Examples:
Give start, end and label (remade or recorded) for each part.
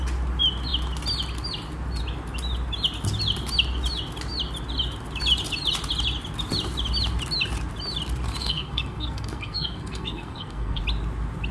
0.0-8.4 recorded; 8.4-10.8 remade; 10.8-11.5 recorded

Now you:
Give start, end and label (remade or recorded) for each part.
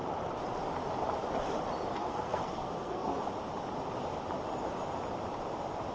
0.0-1.9 recorded; 1.9-3.2 remade; 3.2-5.9 recorded